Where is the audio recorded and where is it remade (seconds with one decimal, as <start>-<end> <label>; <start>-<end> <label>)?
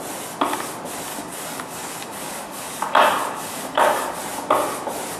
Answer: 0.0-1.1 recorded; 1.1-4.2 remade; 4.2-5.2 recorded